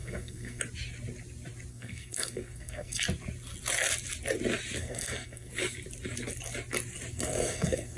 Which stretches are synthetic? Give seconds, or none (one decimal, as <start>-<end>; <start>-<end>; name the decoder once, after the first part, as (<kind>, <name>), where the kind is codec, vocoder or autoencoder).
0.0-0.6 (codec, SNAC); 1.7-3.0; 4.8-5.5; 7.1-8.0